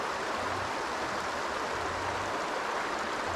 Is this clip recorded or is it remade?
recorded